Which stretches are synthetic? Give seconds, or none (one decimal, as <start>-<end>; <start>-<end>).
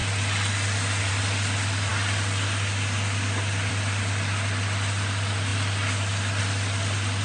none